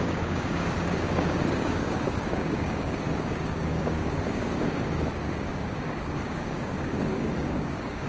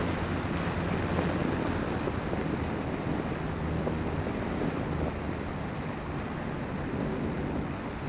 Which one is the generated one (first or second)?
first